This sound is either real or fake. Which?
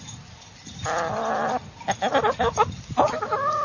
real